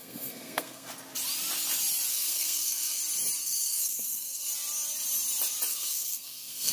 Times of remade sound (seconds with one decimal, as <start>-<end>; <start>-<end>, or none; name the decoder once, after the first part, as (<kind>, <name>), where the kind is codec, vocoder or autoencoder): 0.0-0.9 (codec, SNAC); 2.1-3.0; 3.4-4.5; 5.7-6.7